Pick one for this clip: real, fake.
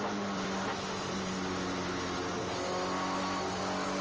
real